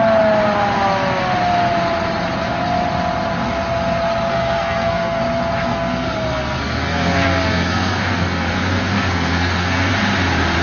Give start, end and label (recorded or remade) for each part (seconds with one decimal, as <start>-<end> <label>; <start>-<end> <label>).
0.0-4.3 recorded; 4.3-5.2 remade; 5.2-5.7 recorded; 5.7-9.9 remade; 9.9-10.6 recorded